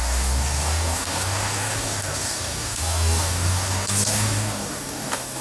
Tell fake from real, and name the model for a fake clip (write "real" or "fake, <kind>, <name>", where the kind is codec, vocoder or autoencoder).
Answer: fake, codec, DAC